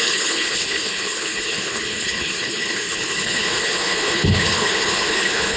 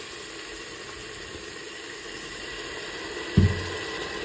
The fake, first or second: first